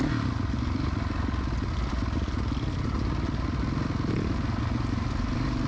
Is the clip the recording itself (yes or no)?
yes